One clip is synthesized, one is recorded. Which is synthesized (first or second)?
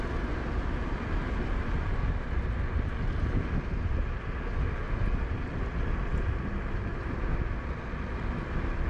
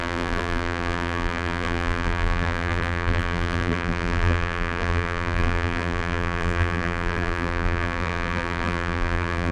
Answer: second